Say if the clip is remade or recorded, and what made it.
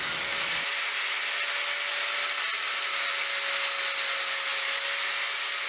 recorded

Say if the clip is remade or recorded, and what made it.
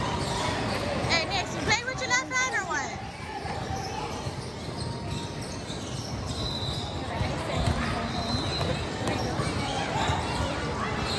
recorded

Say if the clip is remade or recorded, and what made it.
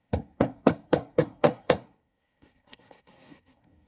remade, codec, SNAC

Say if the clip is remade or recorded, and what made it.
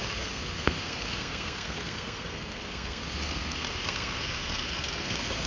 remade, codec, SNAC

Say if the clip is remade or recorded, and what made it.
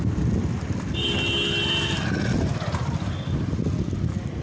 recorded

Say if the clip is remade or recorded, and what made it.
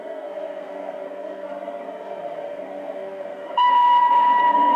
remade, codec, SNAC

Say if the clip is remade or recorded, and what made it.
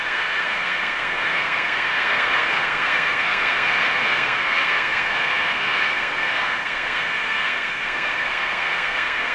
remade, codec, SNAC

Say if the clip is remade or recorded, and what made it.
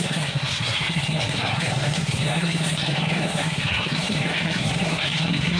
remade, codec, SNAC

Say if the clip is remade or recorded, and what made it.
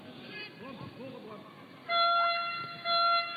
recorded